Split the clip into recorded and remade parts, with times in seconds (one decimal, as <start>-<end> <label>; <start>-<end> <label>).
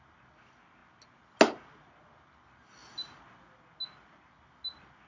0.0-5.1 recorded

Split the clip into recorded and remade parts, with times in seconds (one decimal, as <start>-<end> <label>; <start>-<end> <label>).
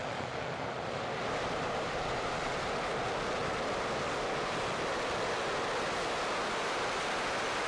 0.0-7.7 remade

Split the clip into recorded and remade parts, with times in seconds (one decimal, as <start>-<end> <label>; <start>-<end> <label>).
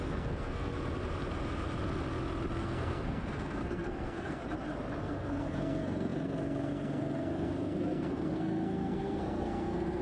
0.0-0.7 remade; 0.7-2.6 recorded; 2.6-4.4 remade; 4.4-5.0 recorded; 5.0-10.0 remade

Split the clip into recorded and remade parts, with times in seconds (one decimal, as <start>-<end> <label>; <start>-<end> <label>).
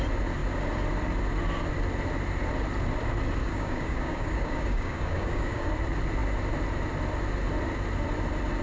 0.0-3.4 recorded; 3.4-5.7 remade; 5.7-8.6 recorded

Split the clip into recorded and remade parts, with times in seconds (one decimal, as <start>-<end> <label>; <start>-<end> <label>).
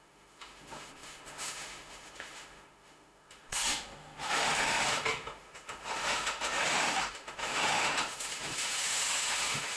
0.0-9.8 remade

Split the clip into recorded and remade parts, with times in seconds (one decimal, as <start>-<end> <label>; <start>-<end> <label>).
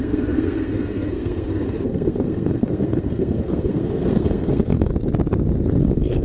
0.0-4.9 remade; 4.9-5.8 recorded; 5.8-6.2 remade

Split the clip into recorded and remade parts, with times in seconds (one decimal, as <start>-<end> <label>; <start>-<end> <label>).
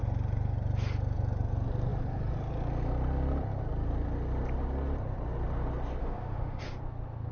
0.0-6.0 recorded; 6.0-6.6 remade; 6.6-7.3 recorded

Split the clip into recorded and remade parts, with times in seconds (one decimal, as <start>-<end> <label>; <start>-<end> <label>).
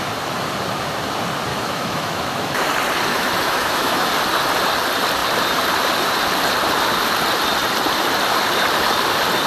0.0-1.5 recorded; 1.5-2.6 remade; 2.6-3.1 recorded; 3.1-4.1 remade; 4.1-9.5 recorded